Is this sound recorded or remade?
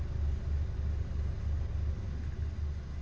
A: recorded